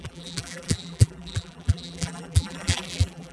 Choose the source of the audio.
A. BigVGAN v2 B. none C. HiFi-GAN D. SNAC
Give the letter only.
A